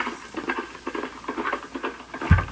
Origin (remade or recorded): recorded